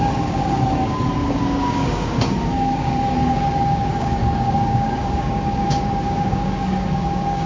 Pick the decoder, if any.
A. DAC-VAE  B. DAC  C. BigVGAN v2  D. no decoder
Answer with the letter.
B